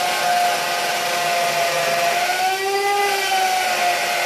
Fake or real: real